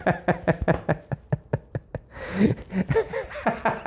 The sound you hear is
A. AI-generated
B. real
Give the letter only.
B